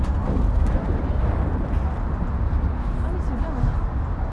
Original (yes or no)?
yes